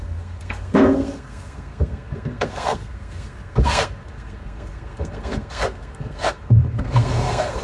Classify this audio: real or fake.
fake